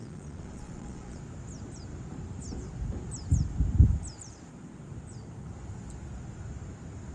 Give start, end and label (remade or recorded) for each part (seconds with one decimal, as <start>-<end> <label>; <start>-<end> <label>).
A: 0.0-1.2 remade; 1.2-7.1 recorded